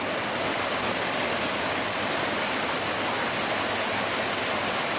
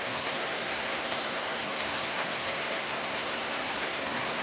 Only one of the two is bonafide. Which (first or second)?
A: first